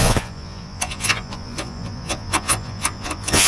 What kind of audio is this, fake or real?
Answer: fake